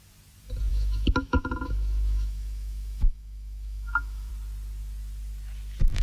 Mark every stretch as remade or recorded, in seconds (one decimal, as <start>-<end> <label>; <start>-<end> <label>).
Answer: 0.0-0.7 recorded; 0.7-4.3 remade; 4.3-6.0 recorded